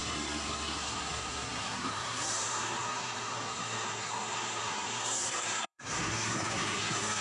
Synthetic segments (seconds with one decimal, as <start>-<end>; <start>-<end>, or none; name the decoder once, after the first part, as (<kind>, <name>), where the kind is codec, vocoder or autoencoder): 0.0-7.2 (codec, SNAC)